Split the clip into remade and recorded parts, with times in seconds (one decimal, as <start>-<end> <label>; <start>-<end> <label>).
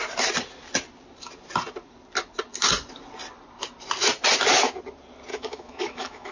0.0-5.3 recorded; 5.3-6.3 remade